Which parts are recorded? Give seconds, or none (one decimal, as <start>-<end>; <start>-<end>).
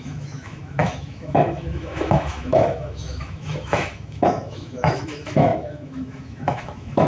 none